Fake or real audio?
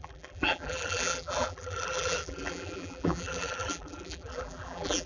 fake